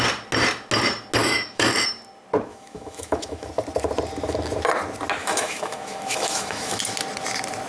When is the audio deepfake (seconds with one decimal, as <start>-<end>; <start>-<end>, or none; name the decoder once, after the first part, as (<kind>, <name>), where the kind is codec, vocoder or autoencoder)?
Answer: 1.2-1.7 (autoencoder, DAC-VAE); 2.5-3.5; 5.2-6.8